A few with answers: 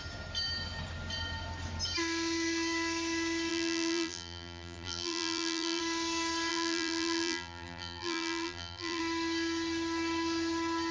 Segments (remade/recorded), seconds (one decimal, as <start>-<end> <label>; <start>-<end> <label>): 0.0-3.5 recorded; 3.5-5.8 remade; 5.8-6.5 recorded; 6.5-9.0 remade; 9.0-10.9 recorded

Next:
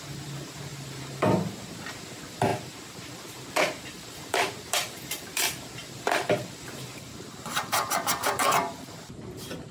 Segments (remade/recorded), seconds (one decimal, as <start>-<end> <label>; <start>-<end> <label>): 0.0-9.7 remade

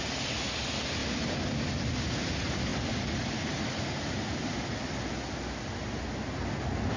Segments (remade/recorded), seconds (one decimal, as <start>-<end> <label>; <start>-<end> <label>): 0.0-1.0 recorded; 1.0-1.6 remade; 1.6-7.0 recorded

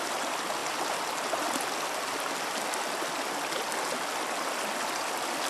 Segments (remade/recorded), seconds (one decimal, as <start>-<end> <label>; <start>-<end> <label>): 0.0-5.5 recorded

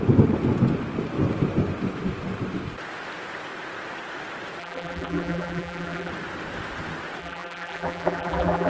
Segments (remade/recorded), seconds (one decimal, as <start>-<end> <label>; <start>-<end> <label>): 0.0-4.6 recorded; 4.6-6.1 remade; 6.1-7.2 recorded; 7.2-8.7 remade

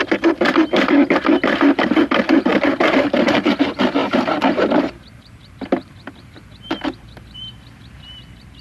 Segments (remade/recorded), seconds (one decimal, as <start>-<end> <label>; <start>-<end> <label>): 0.0-2.5 recorded; 2.5-3.5 remade; 3.5-4.0 recorded; 4.0-7.4 remade; 7.4-8.6 recorded